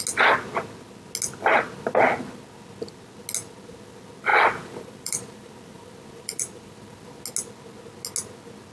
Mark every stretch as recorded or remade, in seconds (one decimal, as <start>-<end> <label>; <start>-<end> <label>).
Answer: 0.0-4.3 recorded; 4.3-7.1 remade; 7.1-8.7 recorded